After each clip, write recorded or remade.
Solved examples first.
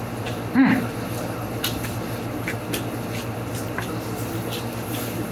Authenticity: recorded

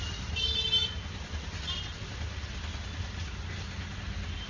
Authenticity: recorded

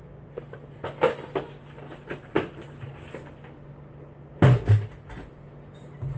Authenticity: recorded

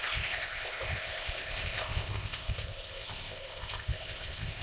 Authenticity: remade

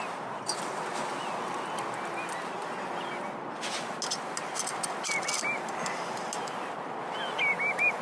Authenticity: recorded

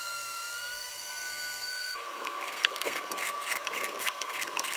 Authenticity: remade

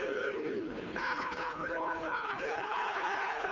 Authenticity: remade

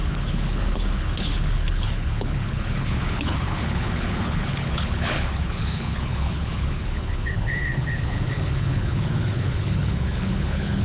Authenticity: remade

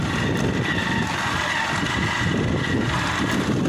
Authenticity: recorded